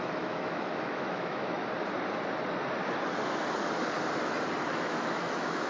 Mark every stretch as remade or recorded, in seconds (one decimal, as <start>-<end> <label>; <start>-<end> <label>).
0.0-1.6 remade; 1.6-4.7 recorded; 4.7-5.7 remade